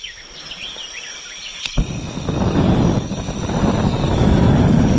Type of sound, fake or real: real